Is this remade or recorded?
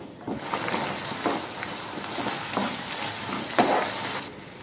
recorded